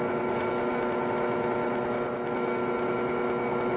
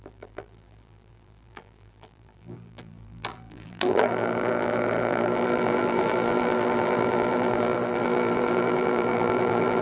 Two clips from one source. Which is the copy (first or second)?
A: second